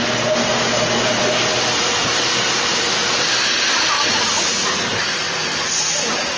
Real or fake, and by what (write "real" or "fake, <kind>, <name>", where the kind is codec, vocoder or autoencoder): real